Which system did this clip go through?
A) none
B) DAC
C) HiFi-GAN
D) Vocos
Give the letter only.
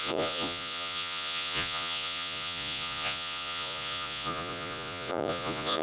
D